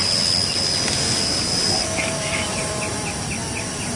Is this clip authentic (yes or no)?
yes